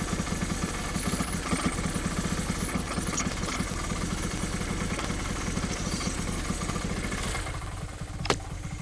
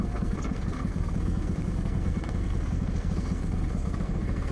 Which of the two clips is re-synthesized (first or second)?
second